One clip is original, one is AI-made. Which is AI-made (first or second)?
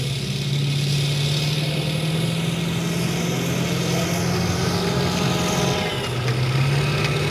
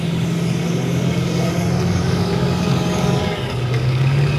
second